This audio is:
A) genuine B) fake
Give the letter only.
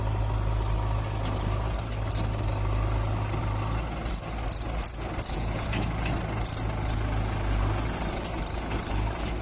A